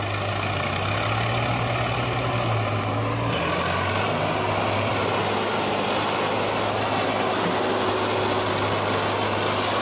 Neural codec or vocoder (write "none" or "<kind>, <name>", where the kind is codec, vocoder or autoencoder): none